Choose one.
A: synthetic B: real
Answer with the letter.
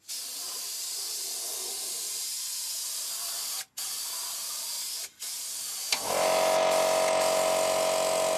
B